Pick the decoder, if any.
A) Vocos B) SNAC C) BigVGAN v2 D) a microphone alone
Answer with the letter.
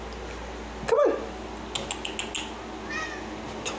D